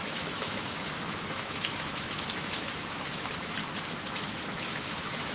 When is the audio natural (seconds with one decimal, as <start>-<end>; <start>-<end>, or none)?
3.6-4.2